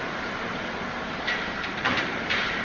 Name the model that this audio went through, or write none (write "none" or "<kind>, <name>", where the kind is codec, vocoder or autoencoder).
vocoder, BigVGAN v2